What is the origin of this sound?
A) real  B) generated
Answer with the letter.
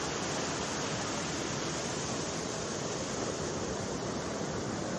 A